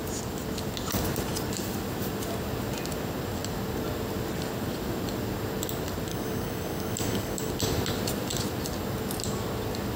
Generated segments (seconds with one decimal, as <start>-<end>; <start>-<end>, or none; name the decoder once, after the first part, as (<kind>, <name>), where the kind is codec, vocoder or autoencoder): 6.1-7.5 (codec, DAC)